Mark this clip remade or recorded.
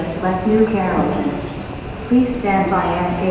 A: recorded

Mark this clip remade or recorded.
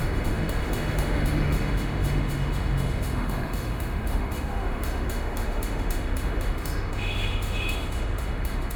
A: remade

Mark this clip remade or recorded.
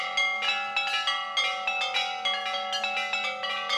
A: recorded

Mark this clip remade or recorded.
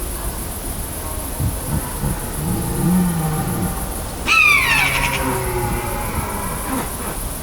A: recorded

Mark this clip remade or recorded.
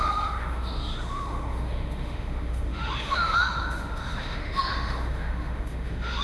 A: remade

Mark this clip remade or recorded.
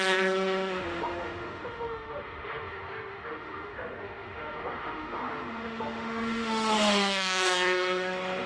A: remade